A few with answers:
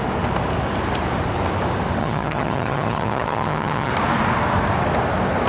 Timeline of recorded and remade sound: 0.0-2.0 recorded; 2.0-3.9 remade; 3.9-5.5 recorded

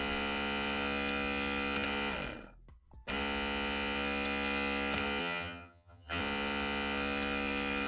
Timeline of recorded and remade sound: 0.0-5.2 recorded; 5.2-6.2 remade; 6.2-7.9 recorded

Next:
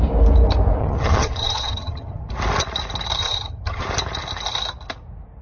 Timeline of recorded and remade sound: 0.0-0.8 recorded; 0.8-2.3 remade; 2.3-3.2 recorded; 3.2-3.8 remade; 3.8-5.4 recorded

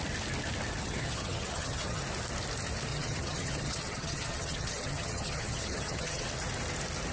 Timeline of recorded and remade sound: 0.0-0.8 recorded; 0.8-2.0 remade; 2.0-2.9 recorded; 2.9-6.3 remade; 6.3-7.1 recorded

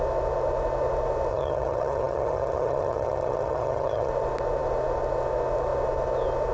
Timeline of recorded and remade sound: 0.0-1.3 recorded; 1.3-4.1 remade; 4.1-6.5 recorded